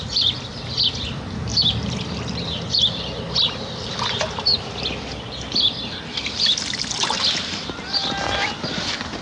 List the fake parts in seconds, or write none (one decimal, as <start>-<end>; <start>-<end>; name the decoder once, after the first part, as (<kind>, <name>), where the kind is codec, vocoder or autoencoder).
none

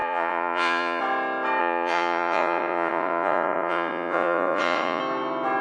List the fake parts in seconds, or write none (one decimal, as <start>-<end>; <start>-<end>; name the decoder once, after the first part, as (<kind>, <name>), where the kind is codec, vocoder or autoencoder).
0.0-1.0 (vocoder, Vocos); 1.6-5.0